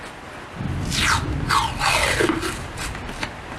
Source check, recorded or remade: recorded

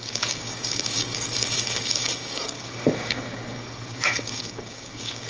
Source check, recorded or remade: remade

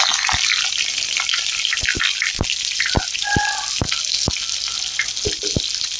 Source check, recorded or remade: recorded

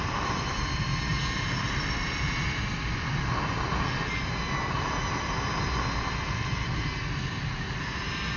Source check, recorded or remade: recorded